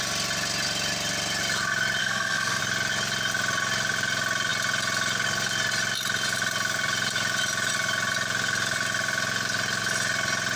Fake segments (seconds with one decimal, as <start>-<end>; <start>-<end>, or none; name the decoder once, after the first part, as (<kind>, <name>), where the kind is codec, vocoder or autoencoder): 2.0-2.6 (codec, SNAC)

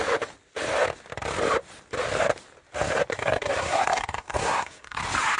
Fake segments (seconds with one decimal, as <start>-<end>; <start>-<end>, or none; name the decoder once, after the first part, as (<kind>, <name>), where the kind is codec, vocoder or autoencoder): 3.1-5.0 (codec, SNAC)

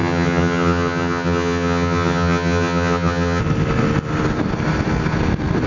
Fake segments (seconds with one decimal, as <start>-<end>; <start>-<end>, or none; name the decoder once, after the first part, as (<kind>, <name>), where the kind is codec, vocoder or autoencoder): 0.0-3.4 (vocoder, HiFi-GAN)

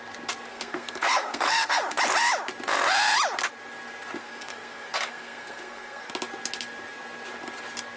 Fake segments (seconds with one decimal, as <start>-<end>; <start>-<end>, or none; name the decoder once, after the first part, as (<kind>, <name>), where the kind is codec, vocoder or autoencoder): 0.5-1.8 (codec, SNAC); 4.2-6.1

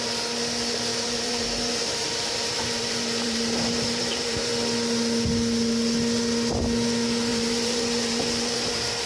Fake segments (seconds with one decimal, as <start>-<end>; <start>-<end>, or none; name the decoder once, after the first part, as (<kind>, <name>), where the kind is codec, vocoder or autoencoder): 0.9-4.5 (vocoder, BigVGAN v2); 7.3-9.1